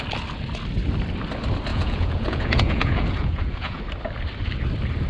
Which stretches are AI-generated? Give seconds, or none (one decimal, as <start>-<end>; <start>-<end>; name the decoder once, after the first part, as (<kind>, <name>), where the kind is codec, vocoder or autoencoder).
1.7-3.8 (vocoder, Vocos)